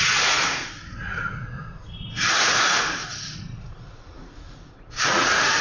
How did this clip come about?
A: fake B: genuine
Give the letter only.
A